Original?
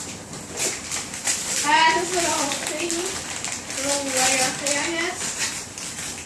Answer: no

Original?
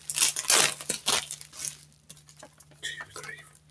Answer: yes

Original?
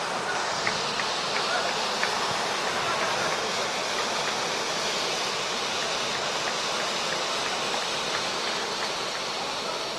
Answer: yes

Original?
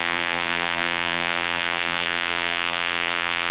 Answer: no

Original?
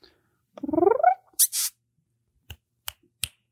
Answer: yes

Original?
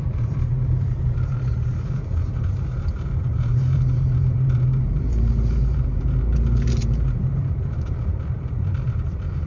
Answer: no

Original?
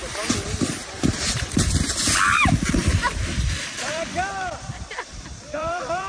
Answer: no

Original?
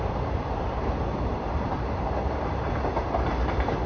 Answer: no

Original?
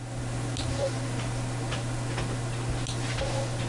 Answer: yes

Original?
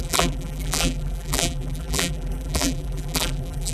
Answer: no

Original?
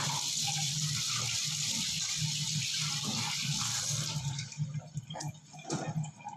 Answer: yes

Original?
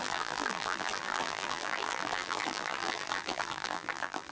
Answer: no